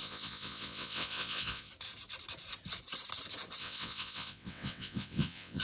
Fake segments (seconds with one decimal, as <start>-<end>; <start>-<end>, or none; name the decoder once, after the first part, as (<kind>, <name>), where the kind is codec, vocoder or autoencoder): 0.0-1.7 (vocoder, WaveNeXt); 3.6-5.6